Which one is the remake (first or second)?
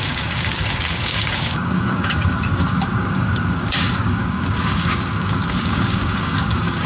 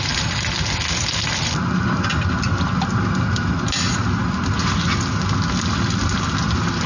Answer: first